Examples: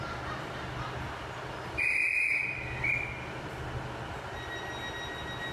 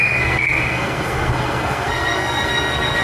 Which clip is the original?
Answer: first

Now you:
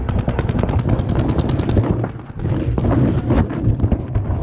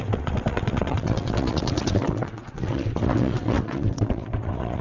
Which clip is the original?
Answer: first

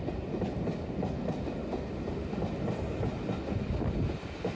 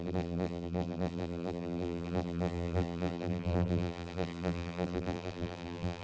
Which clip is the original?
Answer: first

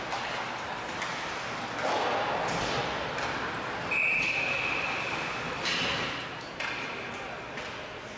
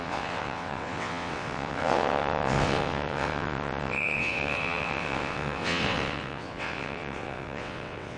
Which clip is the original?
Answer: first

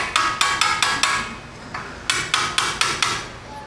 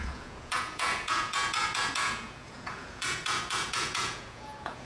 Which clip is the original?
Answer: first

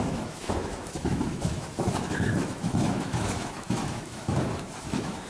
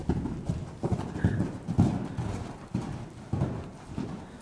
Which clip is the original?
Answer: second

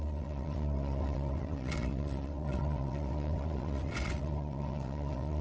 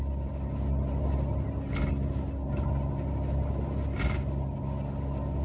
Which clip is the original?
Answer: second